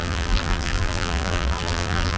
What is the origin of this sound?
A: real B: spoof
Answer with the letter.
B